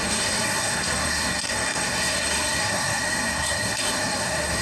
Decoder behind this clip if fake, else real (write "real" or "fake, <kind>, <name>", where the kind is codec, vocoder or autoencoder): fake, codec, SNAC